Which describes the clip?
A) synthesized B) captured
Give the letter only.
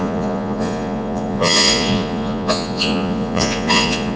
A